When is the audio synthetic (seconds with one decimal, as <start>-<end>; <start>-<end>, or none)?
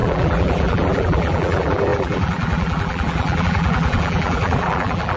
0.0-5.2